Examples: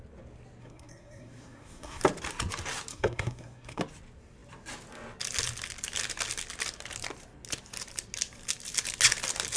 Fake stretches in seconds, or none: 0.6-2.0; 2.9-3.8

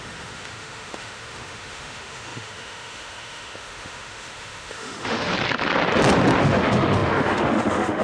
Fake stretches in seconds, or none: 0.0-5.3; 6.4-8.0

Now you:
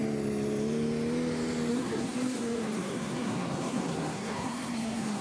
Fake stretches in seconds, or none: 1.7-5.2

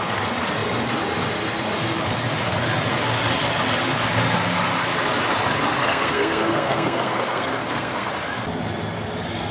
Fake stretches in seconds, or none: 5.8-8.1

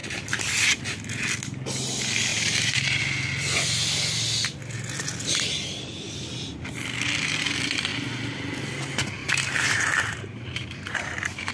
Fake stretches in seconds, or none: 2.3-3.0; 9.2-11.5

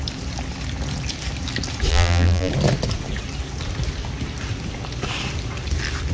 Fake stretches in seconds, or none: 1.9-2.5

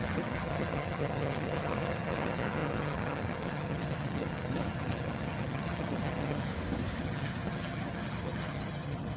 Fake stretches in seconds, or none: 0.0-6.5; 7.0-9.2